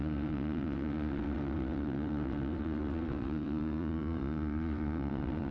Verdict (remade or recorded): remade